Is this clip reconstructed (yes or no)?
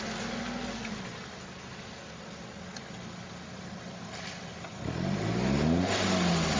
no